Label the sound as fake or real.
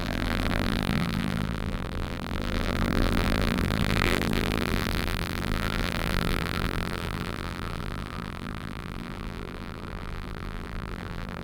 fake